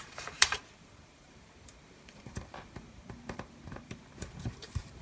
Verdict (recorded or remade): remade